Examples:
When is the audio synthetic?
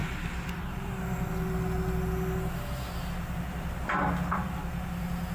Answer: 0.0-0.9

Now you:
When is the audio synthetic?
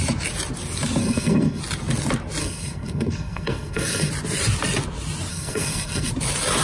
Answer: 1.0-1.6; 2.4-4.1; 5.3-6.1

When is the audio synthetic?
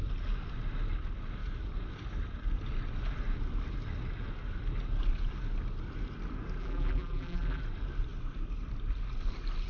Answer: 6.6-7.6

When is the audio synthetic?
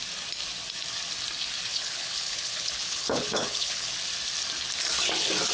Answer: 1.7-3.9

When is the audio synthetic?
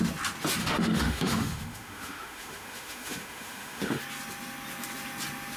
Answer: 0.6-4.0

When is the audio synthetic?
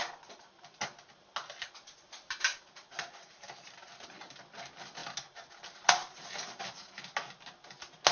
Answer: 0.0-0.8; 2.5-4.2; 6.0-6.6